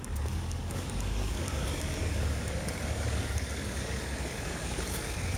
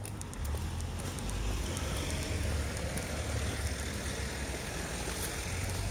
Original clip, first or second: second